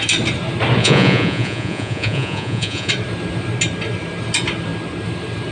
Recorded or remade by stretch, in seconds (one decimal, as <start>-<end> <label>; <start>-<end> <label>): 0.0-0.8 recorded; 0.8-2.9 remade; 2.9-5.5 recorded